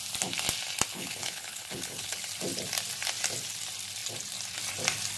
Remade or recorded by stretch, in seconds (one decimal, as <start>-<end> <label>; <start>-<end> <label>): 0.0-0.9 recorded; 0.9-2.2 remade; 2.2-5.2 recorded